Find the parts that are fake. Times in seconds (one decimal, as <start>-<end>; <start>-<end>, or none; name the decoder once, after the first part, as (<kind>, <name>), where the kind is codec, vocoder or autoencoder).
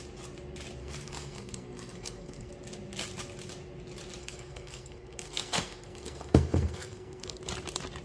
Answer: 0.8-2.5 (codec, SNAC); 4.2-7.4